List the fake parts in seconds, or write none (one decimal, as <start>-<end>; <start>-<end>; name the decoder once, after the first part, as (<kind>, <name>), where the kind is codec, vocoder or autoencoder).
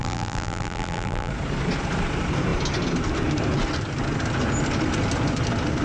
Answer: 0.0-1.3 (vocoder, BigVGAN v2)